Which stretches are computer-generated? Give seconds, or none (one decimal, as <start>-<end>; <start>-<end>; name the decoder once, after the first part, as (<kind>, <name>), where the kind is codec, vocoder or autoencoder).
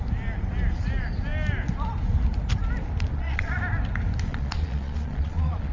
3.1-3.6 (vocoder, Vocos); 4.3-5.7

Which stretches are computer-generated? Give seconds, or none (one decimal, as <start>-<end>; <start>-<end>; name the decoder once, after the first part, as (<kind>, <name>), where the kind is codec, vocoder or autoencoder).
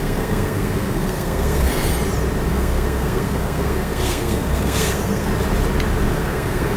0.0-1.9 (codec, SNAC); 2.5-5.3; 6.1-6.8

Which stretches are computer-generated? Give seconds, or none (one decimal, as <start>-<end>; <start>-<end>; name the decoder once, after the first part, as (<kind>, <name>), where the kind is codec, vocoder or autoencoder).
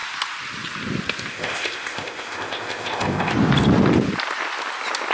1.3-3.3 (codec, ZipCodec)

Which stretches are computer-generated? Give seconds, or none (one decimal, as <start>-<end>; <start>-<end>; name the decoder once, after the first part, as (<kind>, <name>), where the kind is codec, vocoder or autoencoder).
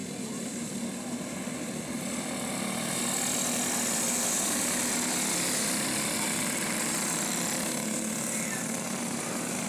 none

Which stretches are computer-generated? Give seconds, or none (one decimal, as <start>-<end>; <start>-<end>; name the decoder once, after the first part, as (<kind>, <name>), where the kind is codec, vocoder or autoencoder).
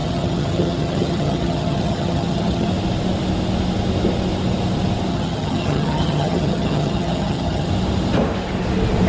0.0-2.7 (vocoder, HiFi-GAN); 5.1-7.7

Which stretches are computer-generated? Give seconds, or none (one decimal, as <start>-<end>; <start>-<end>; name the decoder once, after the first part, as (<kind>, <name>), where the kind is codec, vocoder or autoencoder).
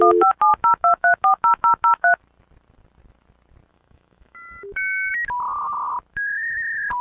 0.5-2.2 (autoencoder, DAC-VAE); 3.7-5.1; 6.1-7.0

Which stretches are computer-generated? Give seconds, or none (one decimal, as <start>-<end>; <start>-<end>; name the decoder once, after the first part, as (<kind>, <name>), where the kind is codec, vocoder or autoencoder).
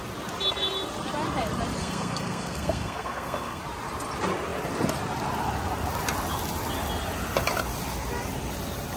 1.8-3.6 (codec, SNAC)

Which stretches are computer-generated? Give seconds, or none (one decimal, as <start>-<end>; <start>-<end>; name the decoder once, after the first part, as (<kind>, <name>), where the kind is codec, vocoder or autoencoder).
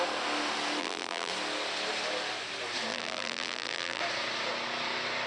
0.8-1.3 (vocoder, BigVGAN v2); 2.9-4.0